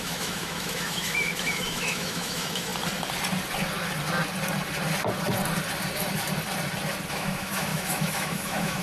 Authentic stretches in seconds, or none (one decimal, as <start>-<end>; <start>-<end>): 2.7-7.1